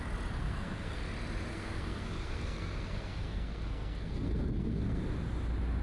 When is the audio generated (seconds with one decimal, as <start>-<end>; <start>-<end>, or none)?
0.4-1.0; 1.5-5.0